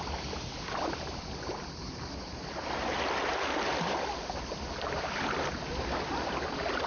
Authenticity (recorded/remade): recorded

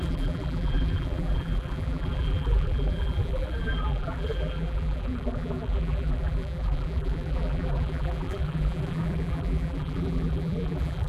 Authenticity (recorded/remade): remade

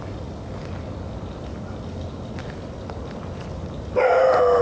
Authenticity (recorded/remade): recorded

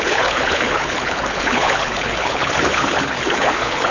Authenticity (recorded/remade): remade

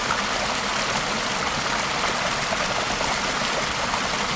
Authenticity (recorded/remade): recorded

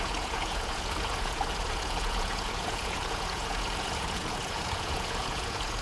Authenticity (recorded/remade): remade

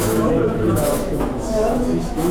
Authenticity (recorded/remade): remade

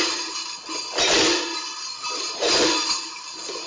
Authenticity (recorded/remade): recorded